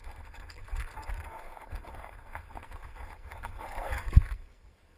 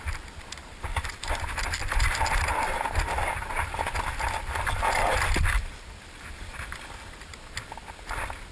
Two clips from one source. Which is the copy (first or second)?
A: first